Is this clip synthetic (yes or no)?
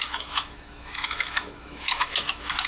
yes